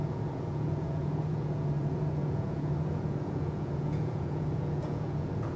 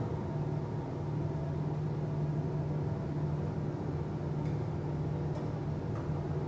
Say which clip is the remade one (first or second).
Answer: first